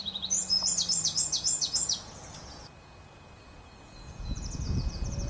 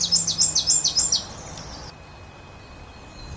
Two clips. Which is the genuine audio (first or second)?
second